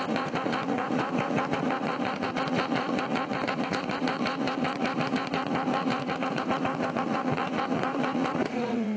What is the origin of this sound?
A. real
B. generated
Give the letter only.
B